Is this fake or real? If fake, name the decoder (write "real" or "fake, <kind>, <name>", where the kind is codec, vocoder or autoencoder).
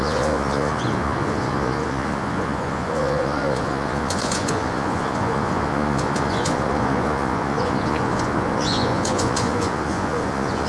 fake, vocoder, Vocos